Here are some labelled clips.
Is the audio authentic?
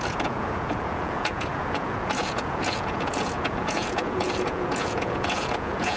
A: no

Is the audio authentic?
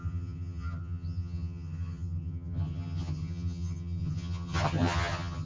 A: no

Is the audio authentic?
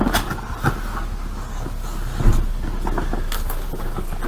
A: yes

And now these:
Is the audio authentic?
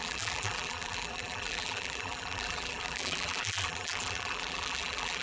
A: no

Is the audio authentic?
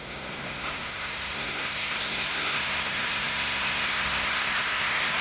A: no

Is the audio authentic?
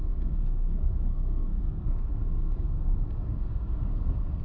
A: no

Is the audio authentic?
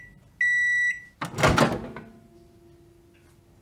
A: yes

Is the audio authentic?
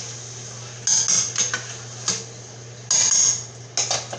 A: yes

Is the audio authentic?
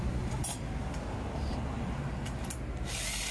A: yes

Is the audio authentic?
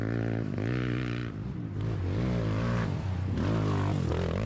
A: yes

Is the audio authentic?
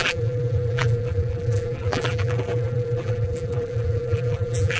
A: no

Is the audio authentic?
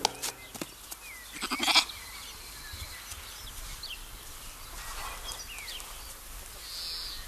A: yes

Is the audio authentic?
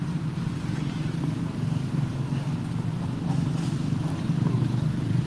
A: no